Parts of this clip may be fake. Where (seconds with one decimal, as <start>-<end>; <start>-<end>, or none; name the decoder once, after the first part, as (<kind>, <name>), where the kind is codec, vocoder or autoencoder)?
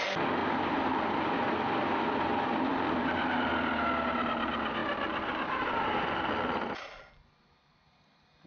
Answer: 0.4-1.1 (vocoder, BigVGAN v2); 2.7-3.5; 4.8-5.7